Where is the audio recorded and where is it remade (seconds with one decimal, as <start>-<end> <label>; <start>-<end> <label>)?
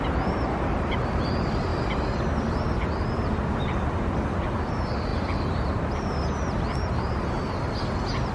0.0-8.3 recorded